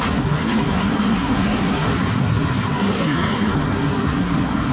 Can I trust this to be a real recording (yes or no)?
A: no